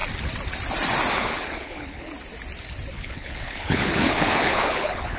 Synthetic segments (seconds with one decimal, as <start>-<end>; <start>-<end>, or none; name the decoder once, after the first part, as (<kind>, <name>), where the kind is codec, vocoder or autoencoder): 1.1-2.1 (codec, HILCodec); 2.9-5.2